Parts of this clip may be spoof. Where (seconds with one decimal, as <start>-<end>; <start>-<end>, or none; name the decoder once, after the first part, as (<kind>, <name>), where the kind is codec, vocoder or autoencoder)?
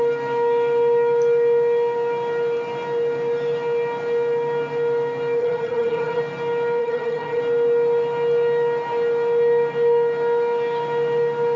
5.4-6.2 (vocoder, HiFi-GAN); 6.8-7.4